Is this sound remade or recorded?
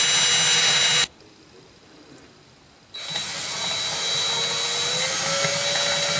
recorded